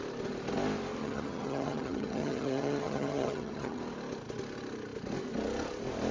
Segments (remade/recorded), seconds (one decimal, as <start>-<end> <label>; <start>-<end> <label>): 0.0-1.0 recorded; 1.0-3.8 remade; 3.8-6.1 recorded